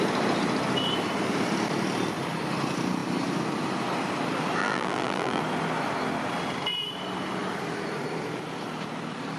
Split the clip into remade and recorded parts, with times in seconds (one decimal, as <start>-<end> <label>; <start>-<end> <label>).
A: 0.0-4.6 recorded; 4.6-5.4 remade; 5.4-9.4 recorded